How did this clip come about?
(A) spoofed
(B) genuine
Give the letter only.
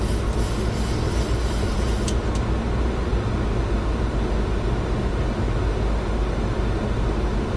B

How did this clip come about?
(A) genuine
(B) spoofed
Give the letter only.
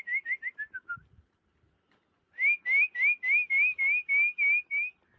A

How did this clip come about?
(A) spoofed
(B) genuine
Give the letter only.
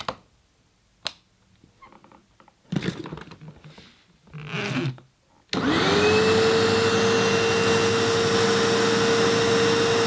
B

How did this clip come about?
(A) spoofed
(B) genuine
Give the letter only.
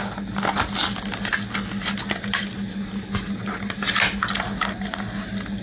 B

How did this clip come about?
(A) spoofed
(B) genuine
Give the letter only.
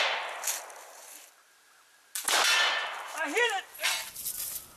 B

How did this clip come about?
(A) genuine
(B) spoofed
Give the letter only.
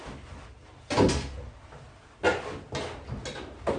A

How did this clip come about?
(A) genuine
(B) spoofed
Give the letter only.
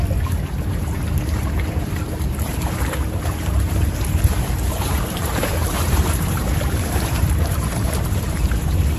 B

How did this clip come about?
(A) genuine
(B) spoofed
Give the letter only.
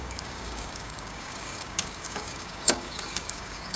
B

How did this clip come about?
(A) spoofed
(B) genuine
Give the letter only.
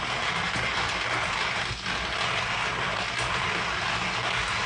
B